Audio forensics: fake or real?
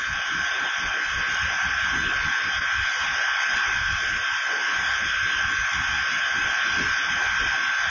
real